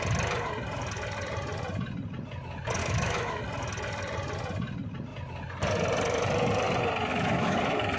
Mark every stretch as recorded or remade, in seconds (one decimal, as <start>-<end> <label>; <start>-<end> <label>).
0.0-2.8 recorded; 2.8-3.4 remade; 3.4-7.1 recorded; 7.1-7.6 remade; 7.6-8.0 recorded